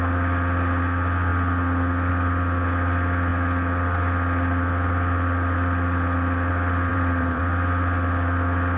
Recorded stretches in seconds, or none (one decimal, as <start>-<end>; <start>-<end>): 0.0-6.9; 7.4-8.8